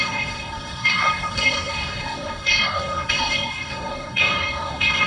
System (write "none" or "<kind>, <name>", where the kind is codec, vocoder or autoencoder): codec, SNAC